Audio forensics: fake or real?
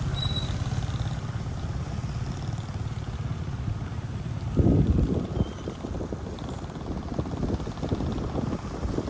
real